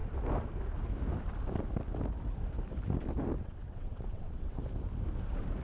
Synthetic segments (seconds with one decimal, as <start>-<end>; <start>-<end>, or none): 3.4-4.6